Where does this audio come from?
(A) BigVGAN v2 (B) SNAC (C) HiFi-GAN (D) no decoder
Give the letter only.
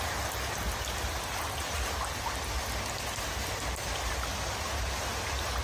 D